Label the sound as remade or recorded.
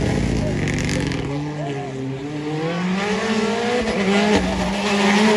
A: recorded